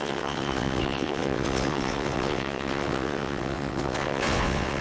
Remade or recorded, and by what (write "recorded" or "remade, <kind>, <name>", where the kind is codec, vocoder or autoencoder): remade, vocoder, WaveNeXt